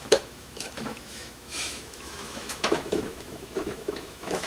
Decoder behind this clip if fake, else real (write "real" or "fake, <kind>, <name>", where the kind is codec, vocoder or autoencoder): fake, autoencoder, DAC-VAE